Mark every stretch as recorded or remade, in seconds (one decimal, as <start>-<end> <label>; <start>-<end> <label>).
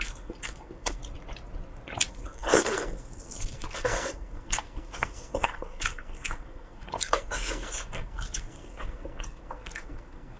0.0-1.0 remade; 1.0-2.1 recorded; 2.1-10.4 remade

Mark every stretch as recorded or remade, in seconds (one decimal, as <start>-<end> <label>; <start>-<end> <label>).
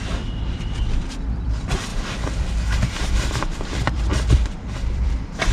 0.0-1.9 remade; 1.9-3.0 recorded; 3.0-5.5 remade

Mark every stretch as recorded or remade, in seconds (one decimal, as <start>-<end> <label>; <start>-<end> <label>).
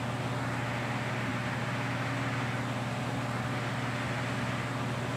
0.0-5.2 recorded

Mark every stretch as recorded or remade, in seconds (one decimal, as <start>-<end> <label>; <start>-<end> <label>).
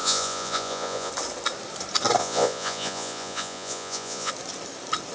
0.0-1.1 remade; 1.1-2.2 recorded; 2.2-4.3 remade; 4.3-5.1 recorded